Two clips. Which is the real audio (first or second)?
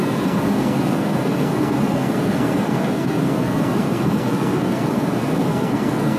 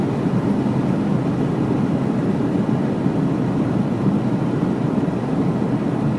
second